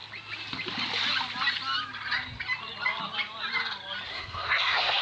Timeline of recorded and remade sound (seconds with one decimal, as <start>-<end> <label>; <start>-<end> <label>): 0.0-4.1 recorded; 4.1-5.0 remade